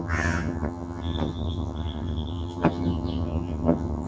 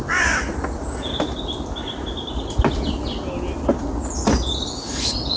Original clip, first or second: second